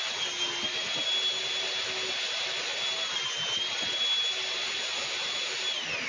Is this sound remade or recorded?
recorded